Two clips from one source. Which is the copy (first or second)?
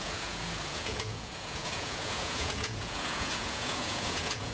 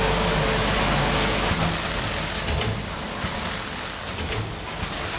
first